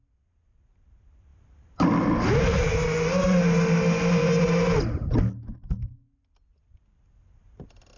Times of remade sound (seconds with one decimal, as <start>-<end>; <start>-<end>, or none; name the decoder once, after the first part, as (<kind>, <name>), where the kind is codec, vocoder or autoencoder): none